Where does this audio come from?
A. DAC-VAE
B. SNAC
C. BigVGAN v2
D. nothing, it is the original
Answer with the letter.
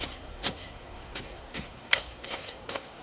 B